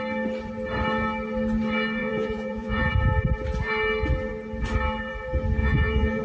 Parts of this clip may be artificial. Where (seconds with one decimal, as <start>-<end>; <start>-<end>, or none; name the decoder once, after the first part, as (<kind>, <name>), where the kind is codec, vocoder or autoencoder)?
2.0-2.9 (vocoder, Vocos); 5.6-6.2